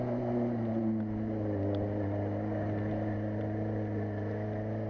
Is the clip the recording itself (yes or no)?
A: yes